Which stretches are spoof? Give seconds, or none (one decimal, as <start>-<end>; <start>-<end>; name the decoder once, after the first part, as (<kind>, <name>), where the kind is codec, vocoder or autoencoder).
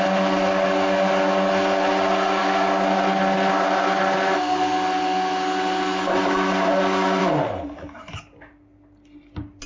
none